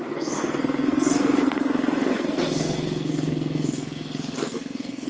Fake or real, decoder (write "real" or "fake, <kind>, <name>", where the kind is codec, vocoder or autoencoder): fake, codec, SNAC